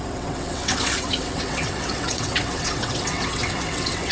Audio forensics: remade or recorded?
remade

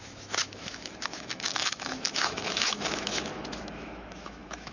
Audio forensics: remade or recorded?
remade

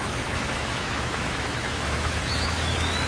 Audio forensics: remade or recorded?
remade